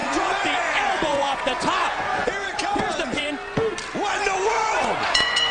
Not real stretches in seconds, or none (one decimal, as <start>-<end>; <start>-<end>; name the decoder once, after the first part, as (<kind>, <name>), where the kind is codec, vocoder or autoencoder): 0.0-3.3 (vocoder, Vocos); 4.6-5.5